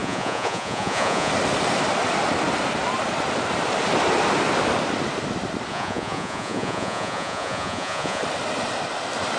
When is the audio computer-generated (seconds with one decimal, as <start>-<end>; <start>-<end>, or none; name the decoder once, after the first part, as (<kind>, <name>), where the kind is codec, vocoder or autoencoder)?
0.0-1.3 (vocoder, Vocos); 5.7-8.2